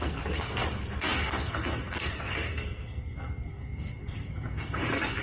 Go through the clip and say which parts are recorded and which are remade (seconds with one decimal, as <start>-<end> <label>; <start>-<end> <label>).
0.0-5.2 remade